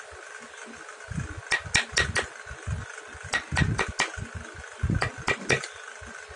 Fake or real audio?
real